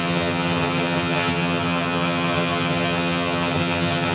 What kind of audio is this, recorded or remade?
remade